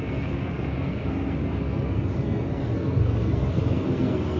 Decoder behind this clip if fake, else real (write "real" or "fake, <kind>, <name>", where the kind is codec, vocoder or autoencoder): fake, codec, SNAC